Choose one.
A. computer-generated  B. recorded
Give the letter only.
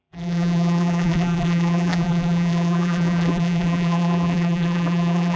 A